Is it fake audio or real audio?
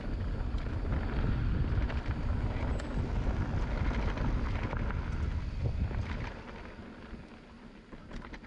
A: real